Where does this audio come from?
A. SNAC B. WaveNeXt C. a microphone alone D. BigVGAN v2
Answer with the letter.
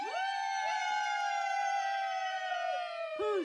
C